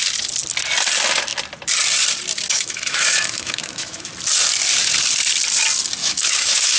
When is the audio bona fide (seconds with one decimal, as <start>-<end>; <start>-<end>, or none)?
0.0-2.5; 4.1-6.0